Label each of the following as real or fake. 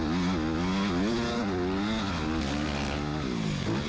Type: real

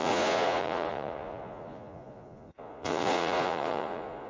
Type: fake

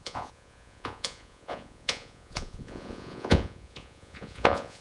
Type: fake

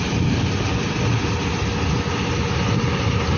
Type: real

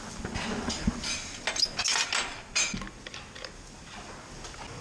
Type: real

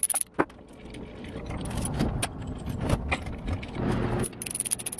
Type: real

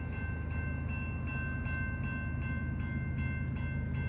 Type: real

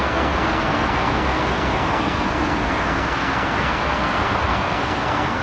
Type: fake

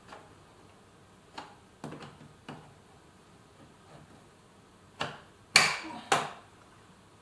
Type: real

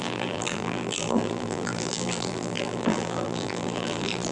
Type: fake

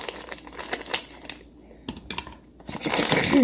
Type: real